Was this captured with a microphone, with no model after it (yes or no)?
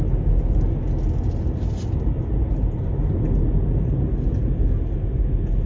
yes